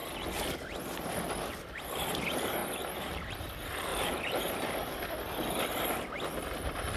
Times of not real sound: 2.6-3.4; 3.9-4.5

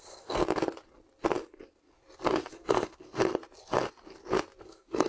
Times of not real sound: 0.0-0.4; 2.5-3.2; 4.6-5.1

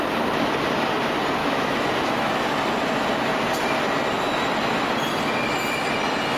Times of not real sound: 1.4-2.5

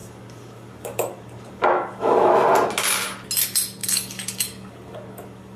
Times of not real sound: 0.0-2.3; 3.8-5.6

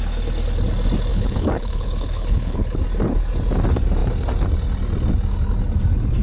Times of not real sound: 1.1-2.8

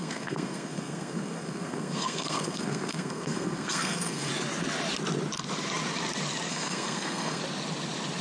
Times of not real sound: 0.0-4.3; 6.5-7.4

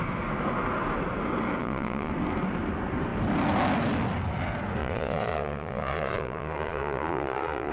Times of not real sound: 1.6-2.1; 4.8-7.7